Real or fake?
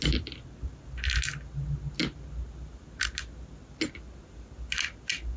real